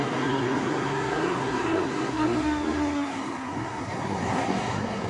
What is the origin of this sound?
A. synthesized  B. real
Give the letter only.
A